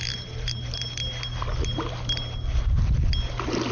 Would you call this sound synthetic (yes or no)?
no